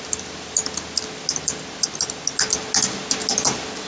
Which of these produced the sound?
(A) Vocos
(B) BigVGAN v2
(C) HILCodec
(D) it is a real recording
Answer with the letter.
D